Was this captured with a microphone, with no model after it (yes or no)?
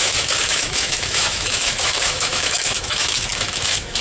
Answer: no